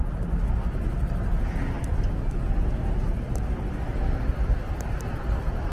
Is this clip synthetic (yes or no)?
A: no